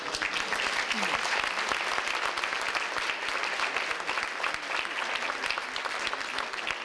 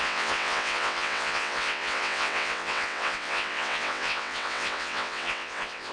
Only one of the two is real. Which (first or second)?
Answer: first